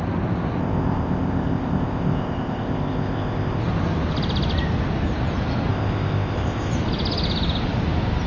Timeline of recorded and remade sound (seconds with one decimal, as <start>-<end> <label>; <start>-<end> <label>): 0.0-0.6 recorded; 0.6-3.6 remade; 3.6-5.7 recorded; 5.7-6.7 remade; 6.7-8.3 recorded